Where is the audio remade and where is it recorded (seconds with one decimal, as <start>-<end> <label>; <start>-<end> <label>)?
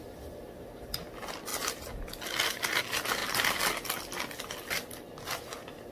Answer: 0.0-5.9 recorded